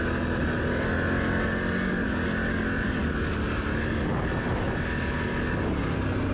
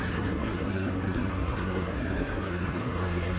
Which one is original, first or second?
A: first